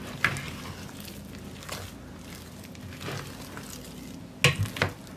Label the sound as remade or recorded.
recorded